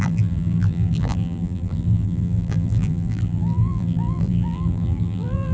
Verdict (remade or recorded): remade